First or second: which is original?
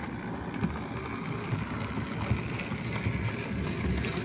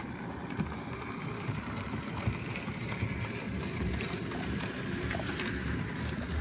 first